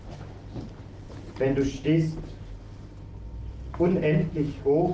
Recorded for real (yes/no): yes